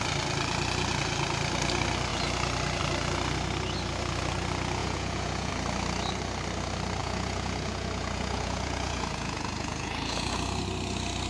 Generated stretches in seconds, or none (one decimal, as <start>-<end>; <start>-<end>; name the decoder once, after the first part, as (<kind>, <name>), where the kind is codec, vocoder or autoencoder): 4.8-5.5 (vocoder, Vocos); 7.0-10.3